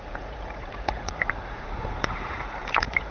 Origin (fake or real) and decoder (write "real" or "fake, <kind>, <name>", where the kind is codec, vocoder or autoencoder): fake, vocoder, Vocos